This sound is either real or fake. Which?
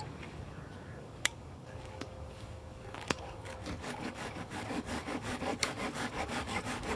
fake